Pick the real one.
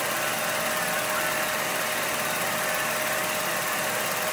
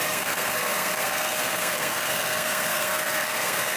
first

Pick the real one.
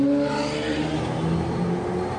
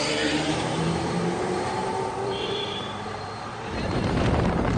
first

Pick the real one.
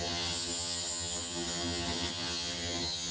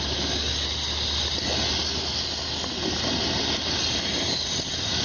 second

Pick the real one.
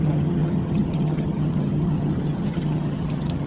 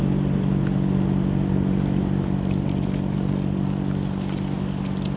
second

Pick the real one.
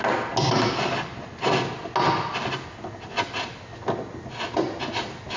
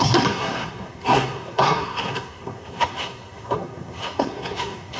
first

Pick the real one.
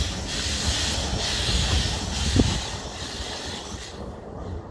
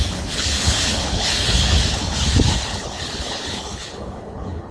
first